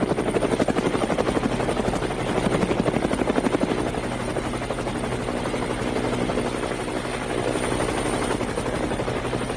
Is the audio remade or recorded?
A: recorded